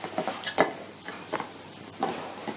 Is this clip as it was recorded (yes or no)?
yes